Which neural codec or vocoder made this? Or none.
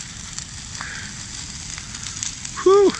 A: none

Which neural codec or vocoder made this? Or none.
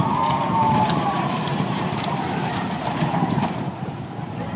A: vocoder, BigVGAN v2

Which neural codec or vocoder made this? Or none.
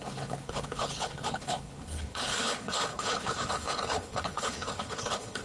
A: codec, HILCodec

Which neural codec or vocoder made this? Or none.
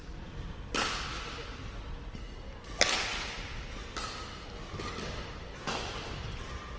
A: none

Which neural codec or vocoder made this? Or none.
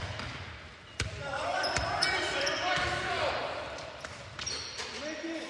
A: vocoder, BigVGAN v2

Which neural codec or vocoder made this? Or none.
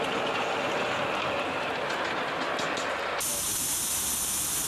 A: none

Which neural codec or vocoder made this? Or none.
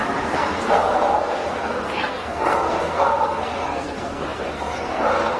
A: codec, SNAC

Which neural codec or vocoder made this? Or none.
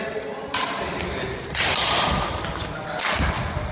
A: none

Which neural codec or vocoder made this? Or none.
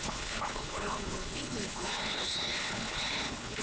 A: codec, HILCodec